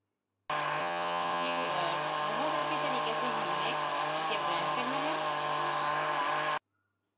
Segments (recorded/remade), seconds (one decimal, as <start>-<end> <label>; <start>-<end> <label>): 0.0-0.8 recorded; 0.8-1.7 remade; 1.7-7.2 recorded